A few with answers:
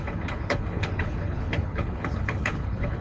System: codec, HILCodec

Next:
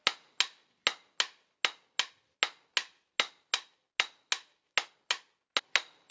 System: none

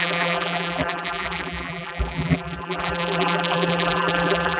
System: vocoder, BigVGAN v2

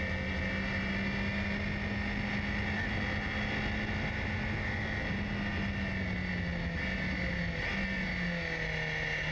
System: none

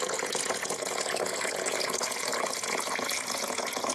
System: vocoder, Vocos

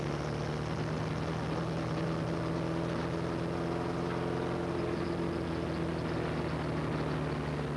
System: none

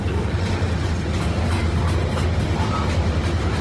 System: none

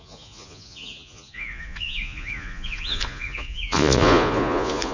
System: vocoder, Vocos